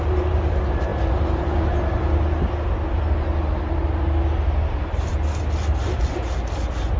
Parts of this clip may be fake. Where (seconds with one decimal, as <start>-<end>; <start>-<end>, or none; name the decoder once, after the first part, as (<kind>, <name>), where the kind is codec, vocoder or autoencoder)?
none